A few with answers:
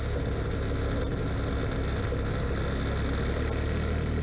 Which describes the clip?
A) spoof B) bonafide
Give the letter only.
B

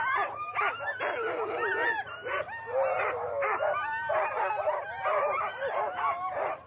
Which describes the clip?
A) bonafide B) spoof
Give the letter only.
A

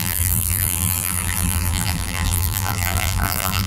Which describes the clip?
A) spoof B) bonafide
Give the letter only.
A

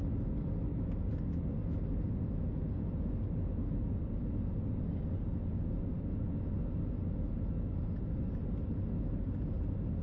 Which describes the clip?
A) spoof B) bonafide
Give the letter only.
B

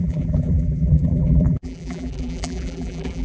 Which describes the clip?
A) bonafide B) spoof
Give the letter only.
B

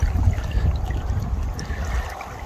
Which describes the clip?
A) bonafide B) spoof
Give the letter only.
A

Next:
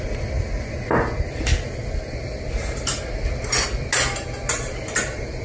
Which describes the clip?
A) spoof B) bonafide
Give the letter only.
B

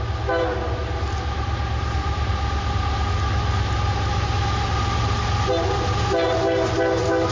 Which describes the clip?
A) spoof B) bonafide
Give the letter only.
B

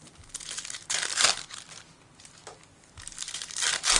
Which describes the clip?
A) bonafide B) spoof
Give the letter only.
A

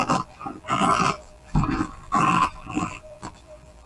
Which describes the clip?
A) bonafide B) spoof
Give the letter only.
B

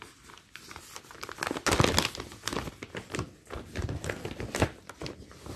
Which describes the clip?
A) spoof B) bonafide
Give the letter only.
B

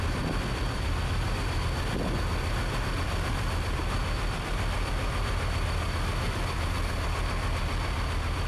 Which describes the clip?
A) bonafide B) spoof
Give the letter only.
B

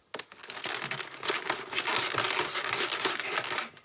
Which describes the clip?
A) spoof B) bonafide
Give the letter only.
B